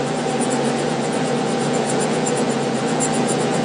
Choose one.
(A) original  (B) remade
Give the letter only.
B